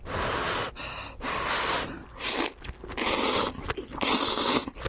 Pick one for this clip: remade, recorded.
recorded